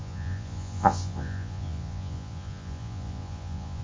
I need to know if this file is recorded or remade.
remade